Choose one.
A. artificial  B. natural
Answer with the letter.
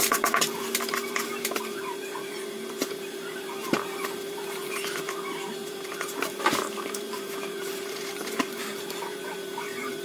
A